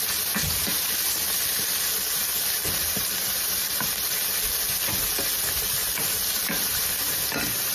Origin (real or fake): real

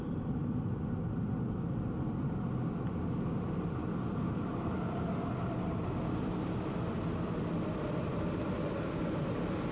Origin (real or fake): real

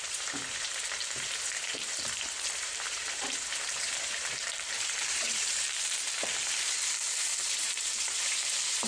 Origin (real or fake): fake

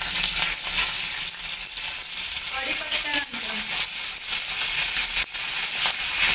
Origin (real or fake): real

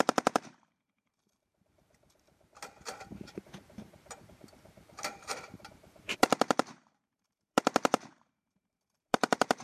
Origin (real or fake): fake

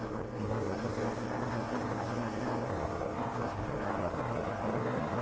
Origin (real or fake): fake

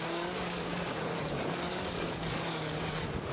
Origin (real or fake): fake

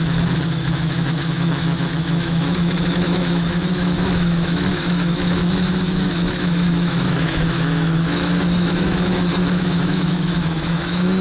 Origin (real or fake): fake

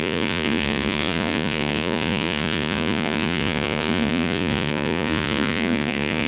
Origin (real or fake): fake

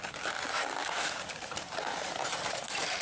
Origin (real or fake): fake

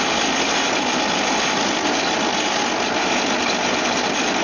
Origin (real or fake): real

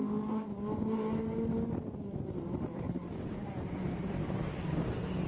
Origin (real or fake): real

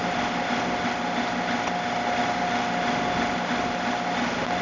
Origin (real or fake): real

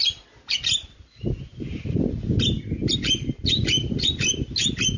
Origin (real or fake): real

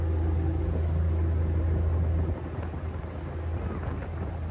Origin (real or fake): real